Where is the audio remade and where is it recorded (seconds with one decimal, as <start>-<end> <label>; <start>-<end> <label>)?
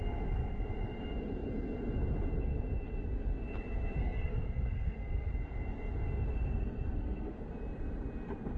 0.0-4.0 recorded; 4.0-5.3 remade; 5.3-6.3 recorded; 6.3-7.5 remade; 7.5-8.6 recorded